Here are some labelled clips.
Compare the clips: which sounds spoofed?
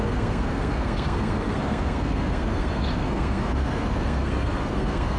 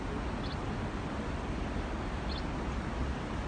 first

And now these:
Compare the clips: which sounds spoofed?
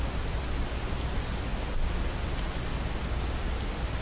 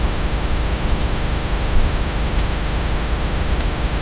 second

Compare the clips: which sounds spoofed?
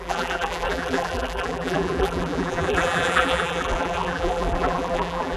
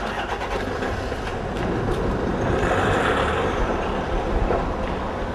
first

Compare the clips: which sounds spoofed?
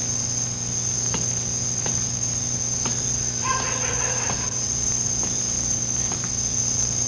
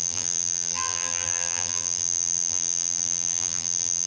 second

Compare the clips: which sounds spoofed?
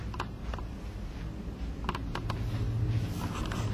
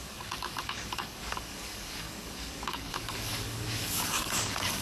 second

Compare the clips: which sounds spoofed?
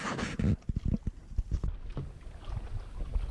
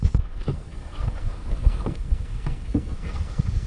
second